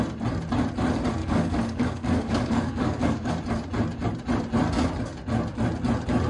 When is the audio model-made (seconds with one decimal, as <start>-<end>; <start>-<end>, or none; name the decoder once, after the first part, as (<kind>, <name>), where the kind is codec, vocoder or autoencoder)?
1.2-3.3 (codec, DAC)